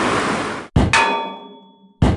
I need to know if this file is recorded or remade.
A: recorded